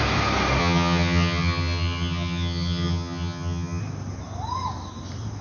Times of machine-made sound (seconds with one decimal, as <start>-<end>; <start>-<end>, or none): 0.6-3.8